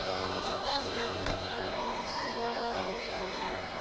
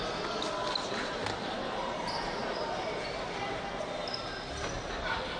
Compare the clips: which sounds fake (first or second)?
first